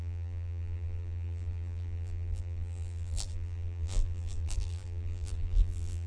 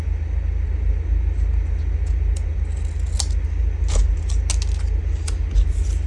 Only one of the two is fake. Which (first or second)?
first